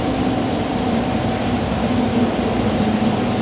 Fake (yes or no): no